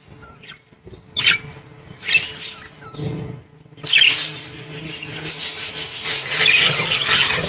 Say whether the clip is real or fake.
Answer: real